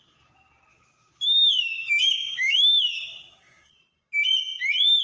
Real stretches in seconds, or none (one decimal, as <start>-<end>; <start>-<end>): 0.0-0.7; 3.7-5.0

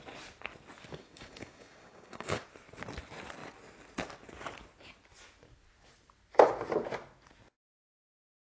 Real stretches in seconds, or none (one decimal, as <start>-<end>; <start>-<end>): 0.0-0.9; 2.4-8.5

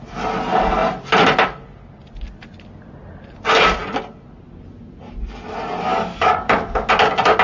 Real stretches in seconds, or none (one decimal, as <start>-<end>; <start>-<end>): 0.0-5.9; 6.9-7.4

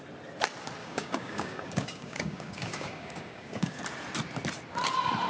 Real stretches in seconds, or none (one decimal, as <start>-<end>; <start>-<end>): 0.0-0.8; 3.8-5.3

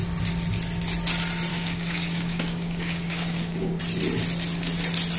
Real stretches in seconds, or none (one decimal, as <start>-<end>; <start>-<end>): 0.0-1.5; 3.8-5.2